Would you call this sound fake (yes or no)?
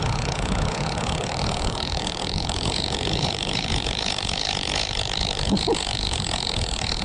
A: yes